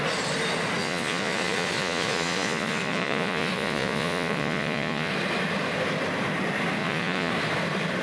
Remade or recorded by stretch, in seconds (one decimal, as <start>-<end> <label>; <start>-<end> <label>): 0.0-0.8 recorded; 0.8-5.1 remade; 5.1-6.8 recorded; 6.8-7.3 remade; 7.3-8.0 recorded